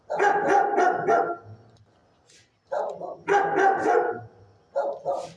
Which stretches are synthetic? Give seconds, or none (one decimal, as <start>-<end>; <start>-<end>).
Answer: none